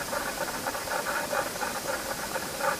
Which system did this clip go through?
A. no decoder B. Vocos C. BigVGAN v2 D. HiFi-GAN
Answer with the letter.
C